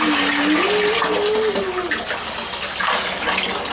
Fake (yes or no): no